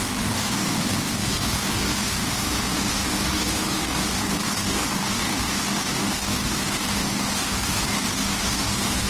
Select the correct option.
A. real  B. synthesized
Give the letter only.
B